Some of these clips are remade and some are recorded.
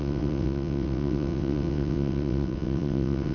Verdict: remade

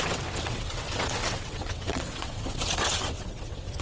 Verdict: remade